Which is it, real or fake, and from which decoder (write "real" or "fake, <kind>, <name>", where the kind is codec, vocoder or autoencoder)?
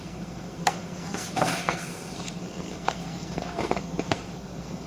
fake, codec, SNAC